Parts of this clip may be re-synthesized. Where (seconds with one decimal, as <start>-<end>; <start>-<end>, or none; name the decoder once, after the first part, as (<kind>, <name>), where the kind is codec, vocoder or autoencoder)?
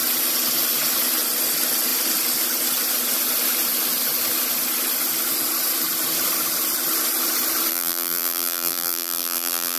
7.7-9.8 (vocoder, BigVGAN v2)